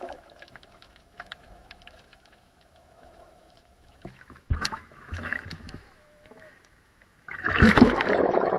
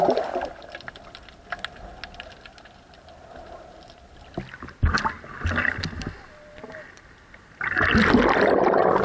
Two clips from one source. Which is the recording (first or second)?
second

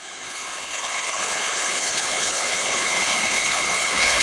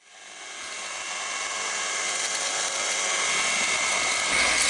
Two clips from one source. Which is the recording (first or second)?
second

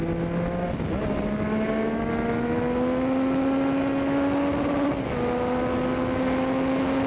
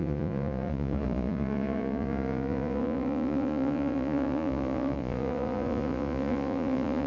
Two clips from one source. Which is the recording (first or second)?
first